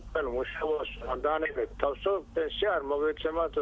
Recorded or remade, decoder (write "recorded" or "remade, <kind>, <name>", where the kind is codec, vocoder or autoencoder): recorded